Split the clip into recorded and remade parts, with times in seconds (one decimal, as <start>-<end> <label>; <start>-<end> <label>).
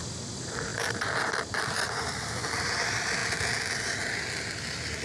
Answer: 0.0-0.7 remade; 0.7-1.5 recorded; 1.5-3.2 remade; 3.2-4.6 recorded; 4.6-5.0 remade